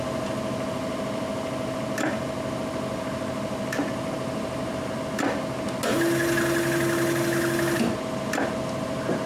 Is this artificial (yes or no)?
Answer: no